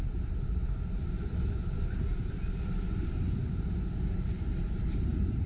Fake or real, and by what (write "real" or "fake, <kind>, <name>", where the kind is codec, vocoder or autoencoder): real